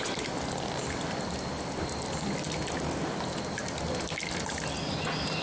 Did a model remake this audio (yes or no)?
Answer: no